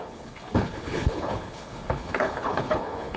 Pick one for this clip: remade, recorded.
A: remade